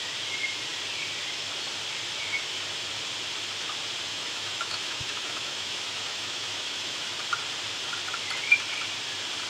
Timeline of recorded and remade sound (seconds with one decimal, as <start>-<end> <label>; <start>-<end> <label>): 0.0-4.1 recorded; 4.1-7.1 remade; 7.1-9.5 recorded